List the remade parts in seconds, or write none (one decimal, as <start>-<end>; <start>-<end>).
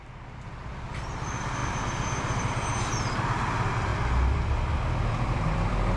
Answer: 0.0-3.9; 5.1-6.0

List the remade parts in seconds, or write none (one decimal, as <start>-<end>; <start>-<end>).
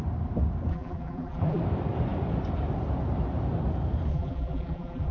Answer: 0.7-1.6; 4.1-5.1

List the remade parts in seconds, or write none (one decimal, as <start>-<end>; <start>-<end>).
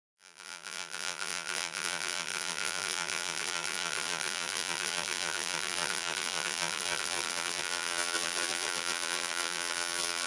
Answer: 0.0-10.3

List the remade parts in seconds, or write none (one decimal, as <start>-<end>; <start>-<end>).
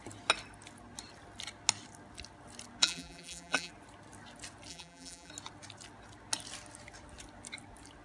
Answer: 2.8-3.7; 4.7-5.3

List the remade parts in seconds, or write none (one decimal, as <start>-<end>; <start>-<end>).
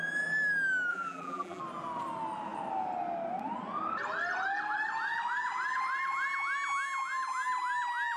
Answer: 0.9-1.6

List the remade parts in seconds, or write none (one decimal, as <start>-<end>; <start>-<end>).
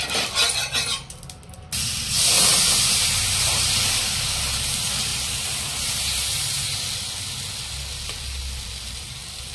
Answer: 5.1-6.1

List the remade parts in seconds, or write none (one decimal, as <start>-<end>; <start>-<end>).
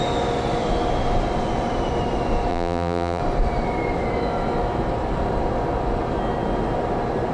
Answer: 2.5-3.2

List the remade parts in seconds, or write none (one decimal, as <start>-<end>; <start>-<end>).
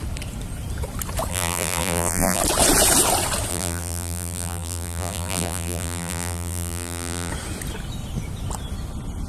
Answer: 1.3-2.4; 3.5-7.3